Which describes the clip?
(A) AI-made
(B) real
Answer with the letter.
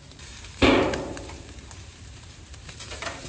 A